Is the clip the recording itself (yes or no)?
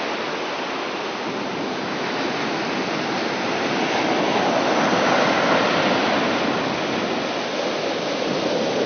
yes